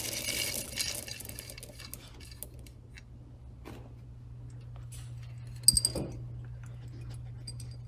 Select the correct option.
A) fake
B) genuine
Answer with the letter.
B